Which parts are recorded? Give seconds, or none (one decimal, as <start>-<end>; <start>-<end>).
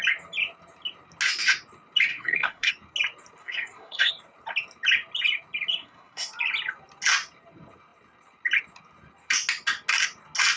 0.0-2.1; 2.7-3.4; 4.1-5.8; 6.3-10.6